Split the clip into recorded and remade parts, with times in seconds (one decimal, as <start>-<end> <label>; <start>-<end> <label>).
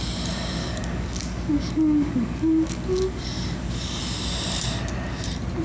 0.0-0.6 recorded; 0.6-4.0 remade; 4.0-5.6 recorded